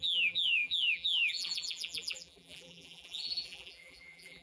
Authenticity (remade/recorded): remade